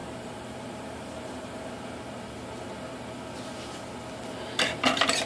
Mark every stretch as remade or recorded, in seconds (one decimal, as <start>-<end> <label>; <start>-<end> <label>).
0.0-1.7 remade; 1.7-5.3 recorded